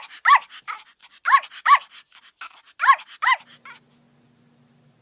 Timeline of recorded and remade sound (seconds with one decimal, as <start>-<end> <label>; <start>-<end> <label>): 0.0-5.0 recorded

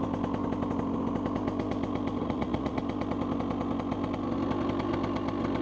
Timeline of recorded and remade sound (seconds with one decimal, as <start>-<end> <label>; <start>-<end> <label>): 0.0-2.2 recorded; 2.2-2.8 remade; 2.8-5.6 recorded

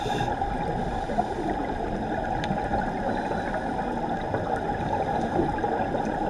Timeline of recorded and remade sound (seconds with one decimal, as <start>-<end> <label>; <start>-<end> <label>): 0.0-6.3 recorded

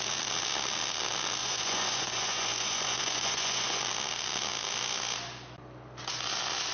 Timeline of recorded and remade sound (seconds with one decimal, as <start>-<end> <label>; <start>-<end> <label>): 0.0-1.4 recorded; 1.4-3.8 remade; 3.8-6.7 recorded

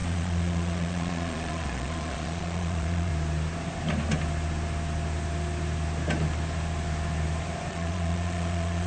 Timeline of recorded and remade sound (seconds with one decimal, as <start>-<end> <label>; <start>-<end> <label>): 0.0-3.1 remade; 3.1-7.7 recorded; 7.7-8.9 remade

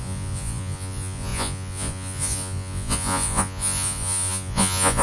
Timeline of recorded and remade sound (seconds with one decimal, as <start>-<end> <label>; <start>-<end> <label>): 0.0-5.0 remade

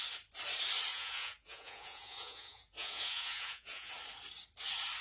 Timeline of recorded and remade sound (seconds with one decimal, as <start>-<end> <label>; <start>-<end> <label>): 0.0-0.9 recorded; 0.9-3.9 remade; 3.9-5.0 recorded

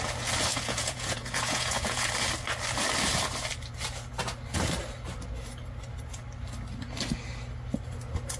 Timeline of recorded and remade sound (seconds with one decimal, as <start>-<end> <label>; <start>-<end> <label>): 0.0-0.5 recorded; 0.5-2.1 remade; 2.1-8.4 recorded